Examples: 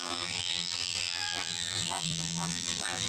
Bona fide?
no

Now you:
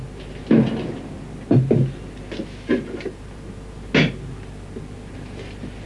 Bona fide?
yes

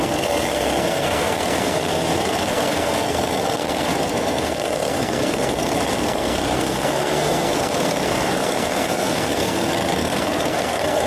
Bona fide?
no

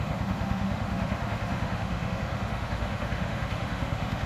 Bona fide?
no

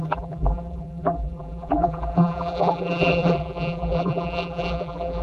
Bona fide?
no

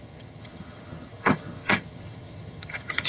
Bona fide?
no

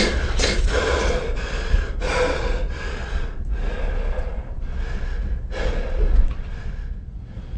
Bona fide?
no